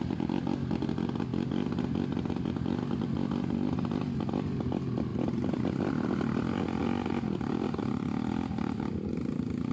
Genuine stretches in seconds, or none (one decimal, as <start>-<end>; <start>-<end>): 0.0-9.7